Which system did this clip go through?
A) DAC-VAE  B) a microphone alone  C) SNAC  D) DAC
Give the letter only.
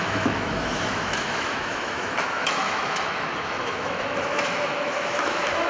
A